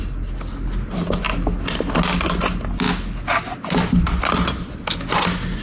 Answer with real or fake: real